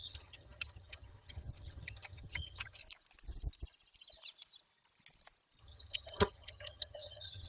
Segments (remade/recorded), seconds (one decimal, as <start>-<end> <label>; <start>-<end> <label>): 0.0-2.8 remade; 2.8-5.6 recorded; 5.6-7.5 remade